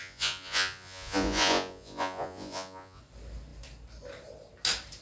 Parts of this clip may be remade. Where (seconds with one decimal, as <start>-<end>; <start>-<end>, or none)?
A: 0.0-3.0